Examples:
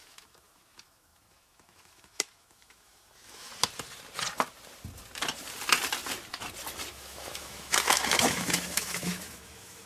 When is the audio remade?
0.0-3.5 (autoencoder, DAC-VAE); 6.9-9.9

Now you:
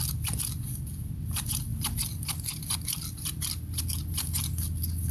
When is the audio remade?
none

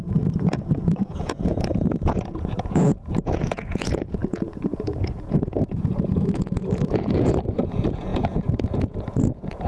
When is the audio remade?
0.0-9.7 (vocoder, Vocos)

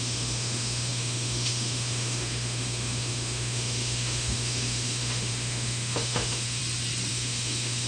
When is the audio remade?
0.0-6.6 (autoencoder, DAC-VAE); 7.1-7.9

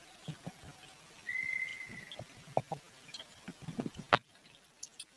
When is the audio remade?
none

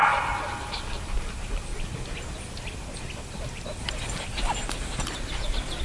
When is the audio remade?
none